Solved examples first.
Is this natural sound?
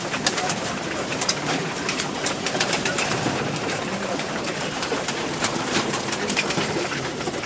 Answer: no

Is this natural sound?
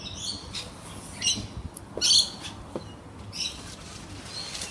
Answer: yes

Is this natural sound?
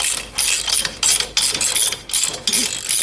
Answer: yes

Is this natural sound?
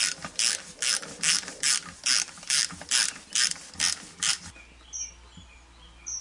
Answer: yes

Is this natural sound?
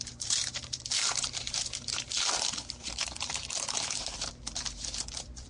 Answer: no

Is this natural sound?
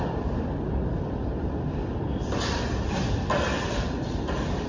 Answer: no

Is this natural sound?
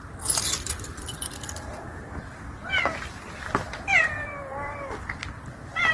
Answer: no